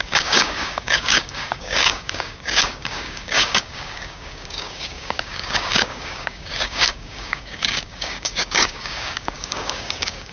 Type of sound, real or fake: fake